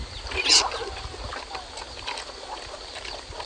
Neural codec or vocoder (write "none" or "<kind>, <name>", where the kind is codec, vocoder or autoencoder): none